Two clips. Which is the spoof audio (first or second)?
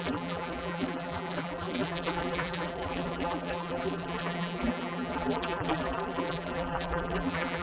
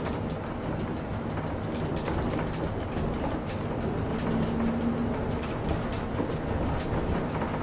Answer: first